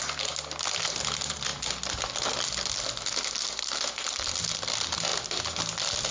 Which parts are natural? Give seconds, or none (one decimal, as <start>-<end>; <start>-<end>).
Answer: 0.0-6.1